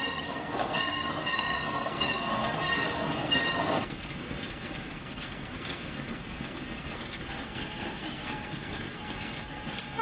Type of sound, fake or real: fake